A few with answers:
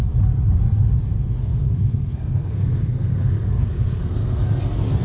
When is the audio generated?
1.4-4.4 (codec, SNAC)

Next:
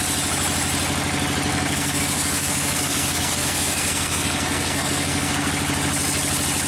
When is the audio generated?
1.5-5.5 (codec, SNAC)

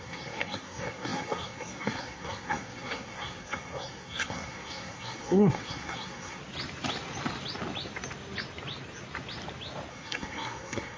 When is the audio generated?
0.0-6.4 (codec, SNAC); 9.9-11.0

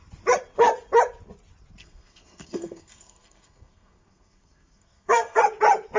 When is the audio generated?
1.8-5.4 (codec, SNAC)

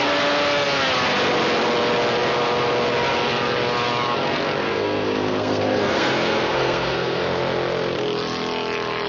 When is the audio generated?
4.6-7.2 (codec, SNAC)